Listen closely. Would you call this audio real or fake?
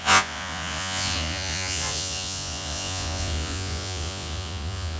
fake